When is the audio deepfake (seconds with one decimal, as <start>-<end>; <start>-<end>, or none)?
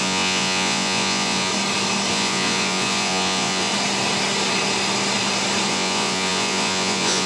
0.0-1.5; 2.1-3.7; 5.7-7.3